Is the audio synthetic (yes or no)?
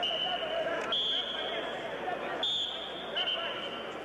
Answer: no